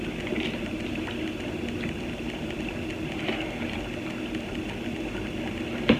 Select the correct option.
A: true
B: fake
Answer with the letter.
A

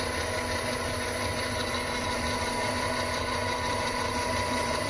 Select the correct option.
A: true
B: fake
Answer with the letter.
A